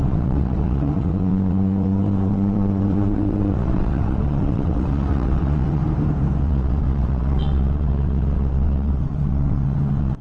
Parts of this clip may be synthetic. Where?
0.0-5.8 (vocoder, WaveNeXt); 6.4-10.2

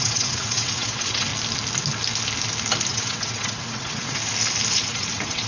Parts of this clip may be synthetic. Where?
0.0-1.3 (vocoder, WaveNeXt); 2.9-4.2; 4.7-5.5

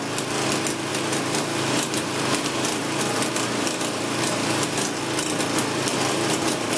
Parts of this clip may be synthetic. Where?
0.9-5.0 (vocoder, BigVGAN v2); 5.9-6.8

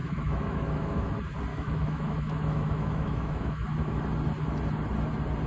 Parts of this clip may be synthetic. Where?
0.0-1.1 (autoencoder, DAC-VAE); 1.5-4.0

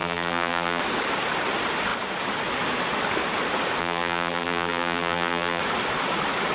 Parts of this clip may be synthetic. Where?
0.0-0.8 (vocoder, BigVGAN v2); 3.8-5.6